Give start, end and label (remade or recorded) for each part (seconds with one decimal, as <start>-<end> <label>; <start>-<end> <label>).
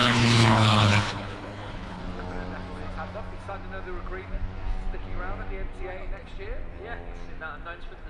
0.0-2.0 remade; 2.0-8.1 recorded